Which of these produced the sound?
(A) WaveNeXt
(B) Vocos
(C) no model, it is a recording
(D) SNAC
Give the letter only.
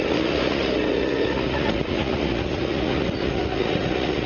B